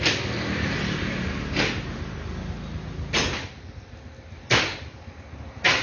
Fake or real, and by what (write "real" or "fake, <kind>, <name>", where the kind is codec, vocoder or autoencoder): real